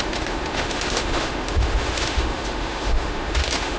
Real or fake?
fake